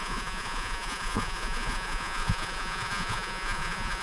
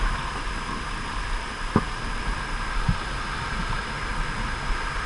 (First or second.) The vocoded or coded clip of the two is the first